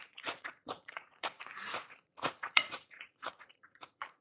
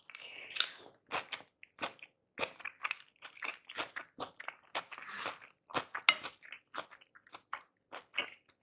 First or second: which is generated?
first